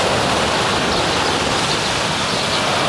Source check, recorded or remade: recorded